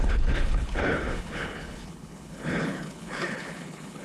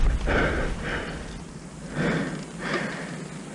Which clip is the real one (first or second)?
second